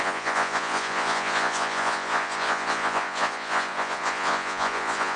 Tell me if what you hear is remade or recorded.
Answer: remade